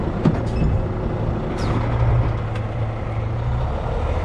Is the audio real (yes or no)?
yes